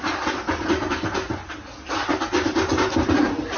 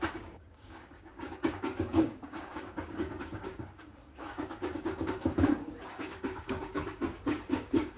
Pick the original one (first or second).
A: first